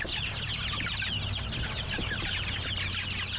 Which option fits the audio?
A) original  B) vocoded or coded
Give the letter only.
A